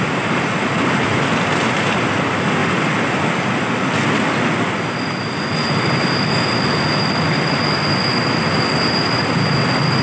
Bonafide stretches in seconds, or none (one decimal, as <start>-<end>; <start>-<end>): 0.0-10.0